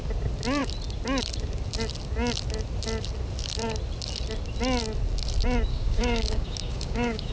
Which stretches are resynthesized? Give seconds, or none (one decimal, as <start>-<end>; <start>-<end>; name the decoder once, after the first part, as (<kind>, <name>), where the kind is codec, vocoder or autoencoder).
5.7-7.3 (codec, DAC)